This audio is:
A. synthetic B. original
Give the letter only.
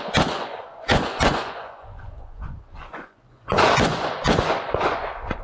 A